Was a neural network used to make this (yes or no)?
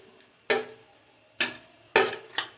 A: no